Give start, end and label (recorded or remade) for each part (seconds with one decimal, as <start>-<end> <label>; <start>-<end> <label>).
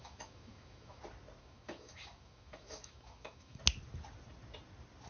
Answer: 0.0-1.0 remade; 1.0-1.4 recorded; 1.4-3.6 remade; 3.6-5.1 recorded